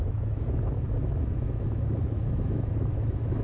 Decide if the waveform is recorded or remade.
remade